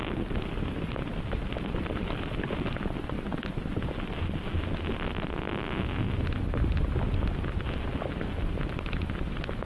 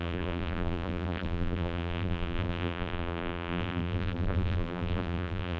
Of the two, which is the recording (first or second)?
first